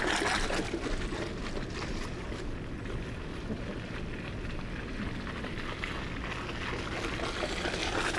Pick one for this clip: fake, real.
real